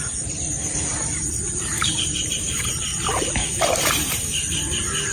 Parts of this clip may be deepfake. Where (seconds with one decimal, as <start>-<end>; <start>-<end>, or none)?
0.0-2.9; 3.9-5.1